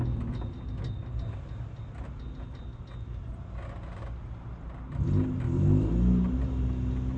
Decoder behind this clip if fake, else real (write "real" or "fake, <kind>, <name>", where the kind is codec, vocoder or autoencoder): real